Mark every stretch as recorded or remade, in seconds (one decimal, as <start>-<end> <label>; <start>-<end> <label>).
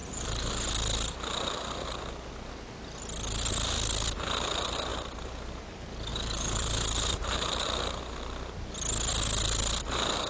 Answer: 0.0-0.7 remade; 0.7-4.9 recorded; 4.9-5.6 remade; 5.6-6.1 recorded; 6.1-8.0 remade; 8.0-10.3 recorded